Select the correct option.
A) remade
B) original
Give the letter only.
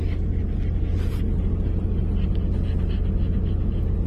B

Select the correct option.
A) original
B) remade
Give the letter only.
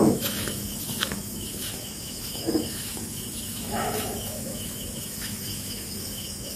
B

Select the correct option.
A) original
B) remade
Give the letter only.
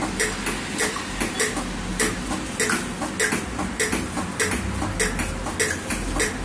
A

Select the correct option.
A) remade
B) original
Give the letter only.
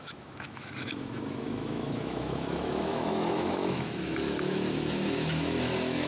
A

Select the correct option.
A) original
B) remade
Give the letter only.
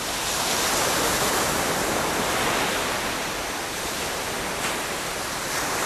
A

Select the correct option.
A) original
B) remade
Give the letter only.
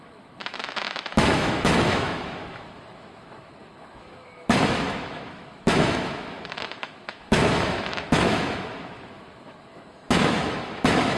B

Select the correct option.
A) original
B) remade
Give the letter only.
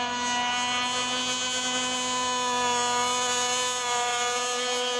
A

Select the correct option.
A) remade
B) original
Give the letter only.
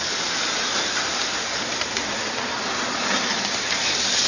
B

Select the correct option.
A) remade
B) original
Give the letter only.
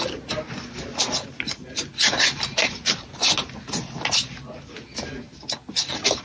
B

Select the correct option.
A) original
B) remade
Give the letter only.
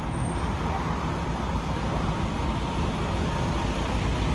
A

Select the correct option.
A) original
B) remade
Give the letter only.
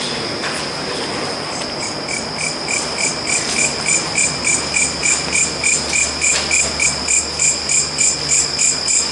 A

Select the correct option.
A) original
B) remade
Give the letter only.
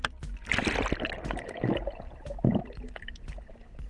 A